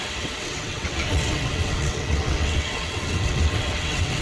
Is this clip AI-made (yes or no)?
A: yes